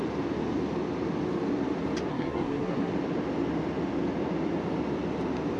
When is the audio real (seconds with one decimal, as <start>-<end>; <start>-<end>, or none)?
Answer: 0.0-2.1; 2.9-5.6